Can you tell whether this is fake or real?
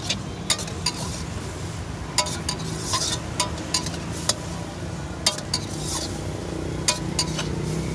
real